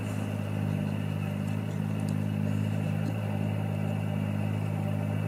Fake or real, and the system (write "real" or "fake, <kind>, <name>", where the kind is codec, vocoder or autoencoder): real